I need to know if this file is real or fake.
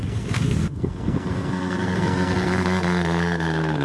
fake